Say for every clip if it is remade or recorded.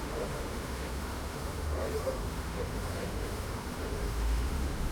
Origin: remade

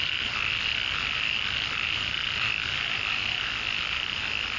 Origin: recorded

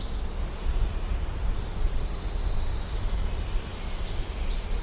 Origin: recorded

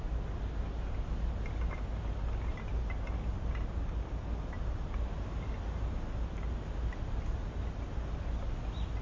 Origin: recorded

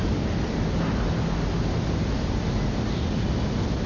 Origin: recorded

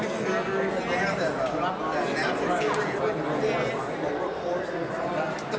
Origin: recorded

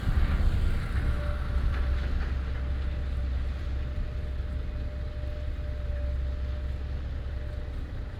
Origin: recorded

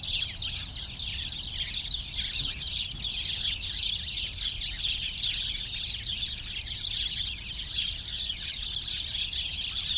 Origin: recorded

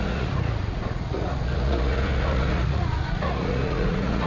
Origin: remade